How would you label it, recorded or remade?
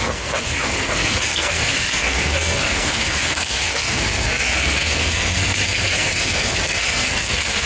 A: remade